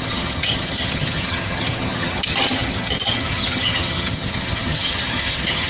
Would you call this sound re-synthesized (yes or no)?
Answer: yes